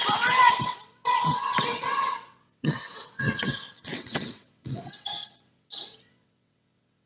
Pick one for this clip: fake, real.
fake